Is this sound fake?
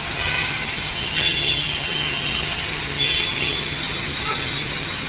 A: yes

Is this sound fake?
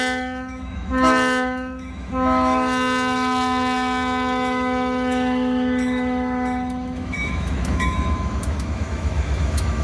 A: yes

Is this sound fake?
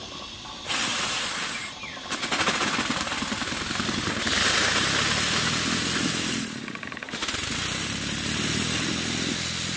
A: no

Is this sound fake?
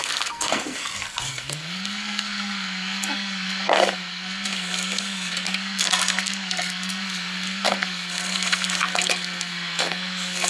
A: yes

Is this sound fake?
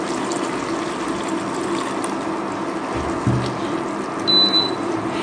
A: no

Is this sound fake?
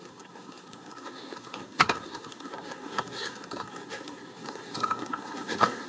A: yes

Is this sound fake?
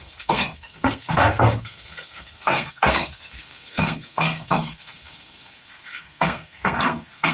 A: yes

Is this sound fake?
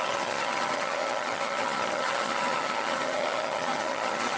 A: yes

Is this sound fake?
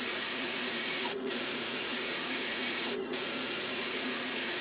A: yes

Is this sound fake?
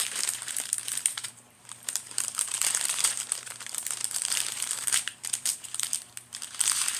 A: yes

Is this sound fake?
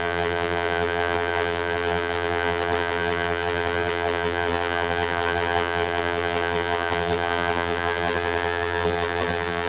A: yes